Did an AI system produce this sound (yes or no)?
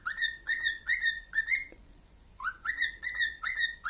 yes